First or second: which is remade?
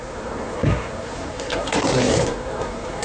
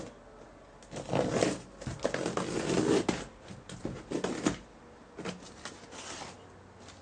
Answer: first